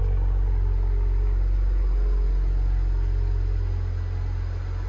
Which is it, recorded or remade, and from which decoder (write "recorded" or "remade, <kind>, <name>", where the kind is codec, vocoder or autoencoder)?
recorded